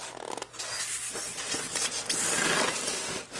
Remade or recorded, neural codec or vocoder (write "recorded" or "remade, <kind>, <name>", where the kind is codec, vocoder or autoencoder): recorded